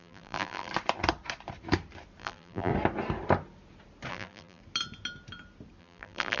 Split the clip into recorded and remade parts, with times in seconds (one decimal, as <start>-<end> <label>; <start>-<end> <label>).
0.0-0.7 remade; 0.7-2.2 recorded; 2.2-2.7 remade; 2.7-4.1 recorded; 4.1-4.6 remade; 4.6-5.8 recorded; 5.8-6.4 remade